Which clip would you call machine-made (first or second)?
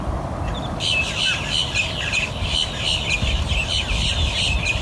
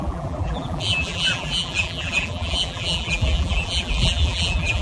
second